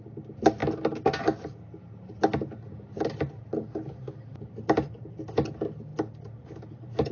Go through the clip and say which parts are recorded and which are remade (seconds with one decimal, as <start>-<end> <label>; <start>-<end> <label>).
0.0-7.1 recorded